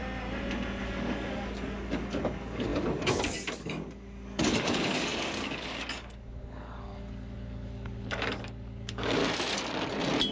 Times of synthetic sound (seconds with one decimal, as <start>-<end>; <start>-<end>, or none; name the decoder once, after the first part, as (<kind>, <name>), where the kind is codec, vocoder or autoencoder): 0.8-9.2 (codec, DAC)